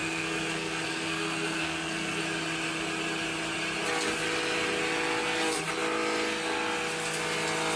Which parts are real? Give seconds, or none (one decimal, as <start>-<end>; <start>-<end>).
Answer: 2.2-7.8